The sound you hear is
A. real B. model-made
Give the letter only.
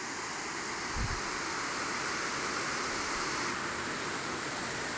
A